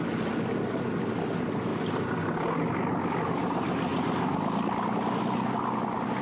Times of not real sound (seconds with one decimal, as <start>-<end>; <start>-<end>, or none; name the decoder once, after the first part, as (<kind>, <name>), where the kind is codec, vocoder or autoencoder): none